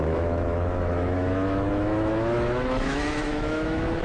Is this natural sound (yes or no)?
no